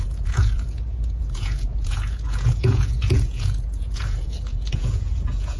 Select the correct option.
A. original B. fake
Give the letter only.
B